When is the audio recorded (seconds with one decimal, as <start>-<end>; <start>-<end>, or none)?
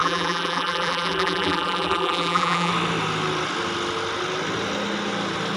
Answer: 2.7-5.6